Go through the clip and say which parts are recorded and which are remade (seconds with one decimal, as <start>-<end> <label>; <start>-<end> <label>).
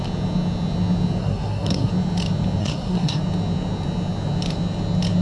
0.0-1.2 recorded; 1.2-1.9 remade; 1.9-2.6 recorded; 2.6-3.2 remade; 3.2-5.2 recorded